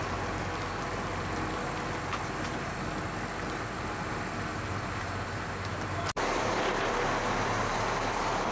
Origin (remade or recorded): recorded